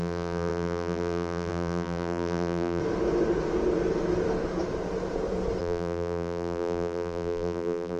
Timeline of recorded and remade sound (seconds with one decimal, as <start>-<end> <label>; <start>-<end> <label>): 0.0-2.8 remade; 2.8-5.6 recorded; 5.6-8.0 remade